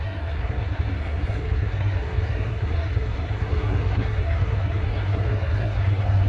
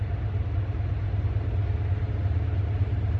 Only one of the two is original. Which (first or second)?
second